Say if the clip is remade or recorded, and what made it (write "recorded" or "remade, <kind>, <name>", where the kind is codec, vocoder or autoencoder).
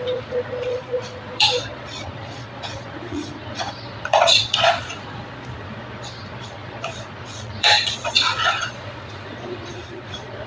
remade, vocoder, Vocos